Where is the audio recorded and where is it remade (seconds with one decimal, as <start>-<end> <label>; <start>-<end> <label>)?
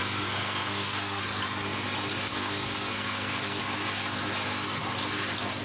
0.0-0.4 recorded; 0.4-1.2 remade; 1.2-2.3 recorded; 2.3-3.6 remade; 3.6-5.6 recorded